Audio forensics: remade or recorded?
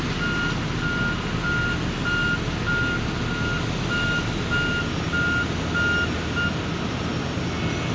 recorded